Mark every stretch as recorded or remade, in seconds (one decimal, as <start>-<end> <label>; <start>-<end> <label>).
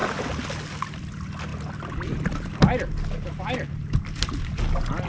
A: 0.0-1.5 recorded; 1.5-4.6 remade; 4.6-5.1 recorded